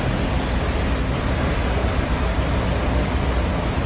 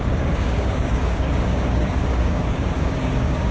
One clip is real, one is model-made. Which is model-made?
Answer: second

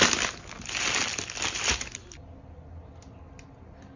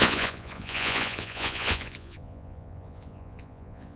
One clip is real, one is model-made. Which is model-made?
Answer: second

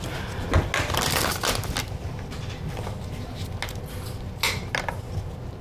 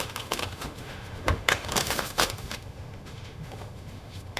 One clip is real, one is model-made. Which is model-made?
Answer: second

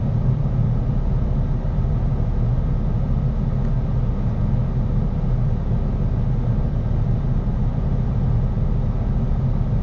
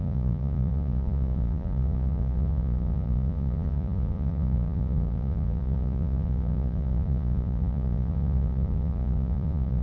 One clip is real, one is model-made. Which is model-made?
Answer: second